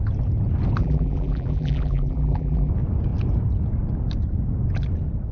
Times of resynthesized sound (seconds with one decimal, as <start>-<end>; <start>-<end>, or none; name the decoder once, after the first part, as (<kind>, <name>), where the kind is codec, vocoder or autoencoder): 0.8-2.7 (vocoder, BigVGAN v2)